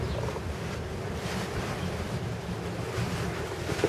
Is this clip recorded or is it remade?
recorded